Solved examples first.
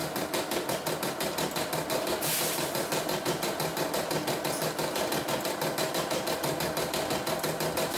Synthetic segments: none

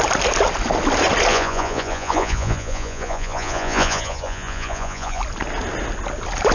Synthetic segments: 1.3-5.2 (vocoder, Vocos)